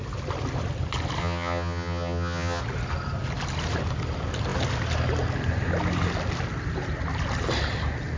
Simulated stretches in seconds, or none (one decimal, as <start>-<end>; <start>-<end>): 1.2-2.6